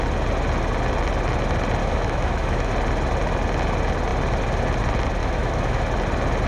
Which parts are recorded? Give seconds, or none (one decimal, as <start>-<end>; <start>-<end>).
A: 0.0-1.8; 2.7-5.2; 5.8-6.5